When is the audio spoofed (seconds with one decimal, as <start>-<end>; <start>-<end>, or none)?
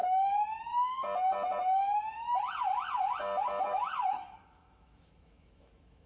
3.7-6.1